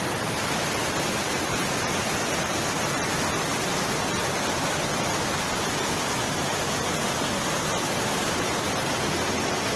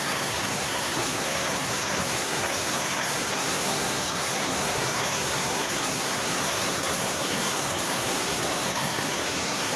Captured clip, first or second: first